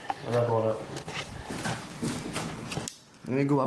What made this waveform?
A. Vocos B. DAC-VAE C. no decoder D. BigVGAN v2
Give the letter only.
C